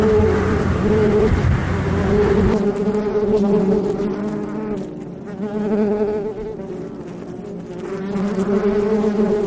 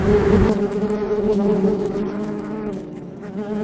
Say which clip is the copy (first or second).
second